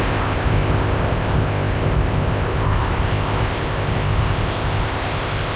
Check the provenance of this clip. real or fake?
fake